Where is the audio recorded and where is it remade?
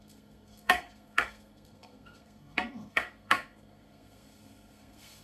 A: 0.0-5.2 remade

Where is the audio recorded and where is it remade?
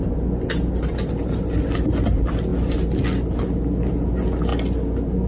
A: 0.0-5.3 recorded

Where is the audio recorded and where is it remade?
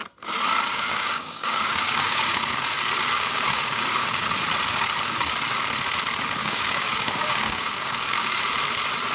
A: 0.0-0.7 recorded; 0.7-2.4 remade; 2.4-3.0 recorded; 3.0-4.3 remade; 4.3-6.4 recorded; 6.4-8.4 remade; 8.4-9.1 recorded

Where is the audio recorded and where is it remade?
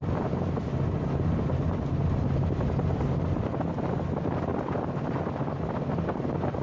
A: 0.0-6.6 recorded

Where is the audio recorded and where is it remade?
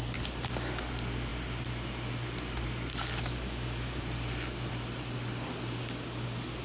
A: 0.0-6.6 recorded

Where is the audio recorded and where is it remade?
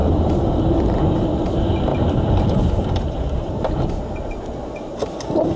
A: 0.0-0.8 remade; 0.8-1.9 recorded; 1.9-4.0 remade; 4.0-5.6 recorded